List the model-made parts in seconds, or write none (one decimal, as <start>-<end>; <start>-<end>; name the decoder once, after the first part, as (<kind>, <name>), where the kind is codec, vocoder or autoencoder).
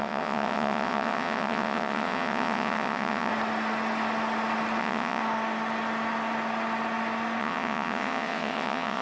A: 0.0-3.3 (vocoder, WaveNeXt); 4.8-5.2; 7.4-9.0